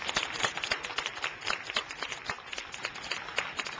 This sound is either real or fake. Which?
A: real